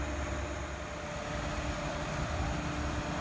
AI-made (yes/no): no